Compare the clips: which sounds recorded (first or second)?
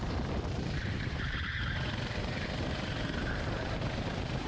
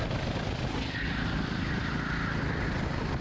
second